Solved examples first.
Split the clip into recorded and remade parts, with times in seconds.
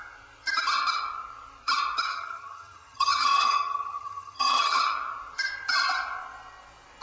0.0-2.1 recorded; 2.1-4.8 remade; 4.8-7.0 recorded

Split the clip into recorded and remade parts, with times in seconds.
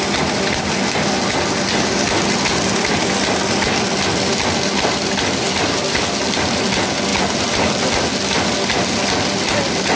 0.0-10.0 recorded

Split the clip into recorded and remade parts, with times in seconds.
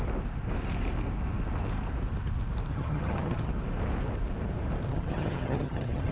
0.0-2.7 recorded; 2.7-3.5 remade; 3.5-4.9 recorded; 4.9-6.1 remade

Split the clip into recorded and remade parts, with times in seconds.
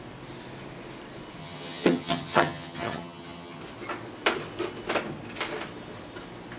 0.0-1.4 recorded; 1.4-3.6 remade; 3.6-6.6 recorded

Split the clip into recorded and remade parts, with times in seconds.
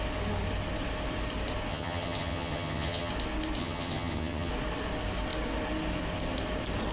0.0-1.7 recorded; 1.7-3.1 remade; 3.1-3.6 recorded; 3.6-4.5 remade; 4.5-6.9 recorded